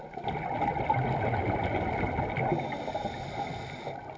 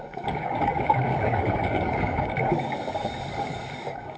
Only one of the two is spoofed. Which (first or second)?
second